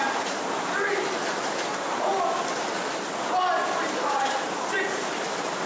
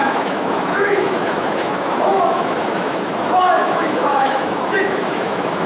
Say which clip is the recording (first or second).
first